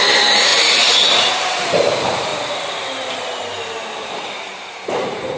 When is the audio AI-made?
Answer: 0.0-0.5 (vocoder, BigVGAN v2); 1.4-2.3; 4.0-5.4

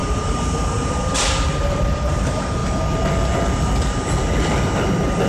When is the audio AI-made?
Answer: 0.0-2.6 (vocoder, BigVGAN v2)

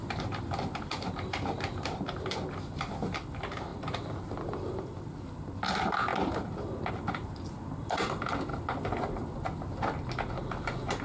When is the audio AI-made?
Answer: 0.0-6.1 (vocoder, BigVGAN v2); 6.9-8.5; 10.3-11.0

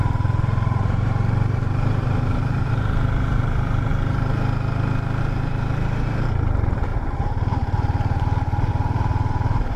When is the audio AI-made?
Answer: 0.0-3.9 (vocoder, BigVGAN v2); 5.2-9.8